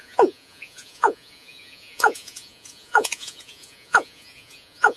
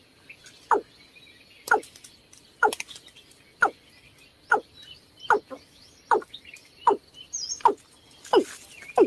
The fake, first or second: first